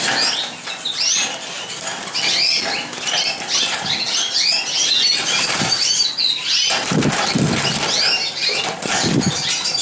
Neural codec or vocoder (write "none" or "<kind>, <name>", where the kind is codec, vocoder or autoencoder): none